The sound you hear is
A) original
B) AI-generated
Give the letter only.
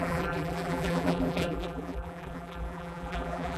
B